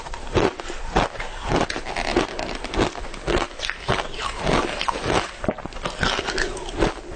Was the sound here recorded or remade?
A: recorded